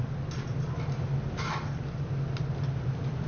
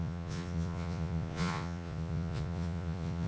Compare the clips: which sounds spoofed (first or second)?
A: second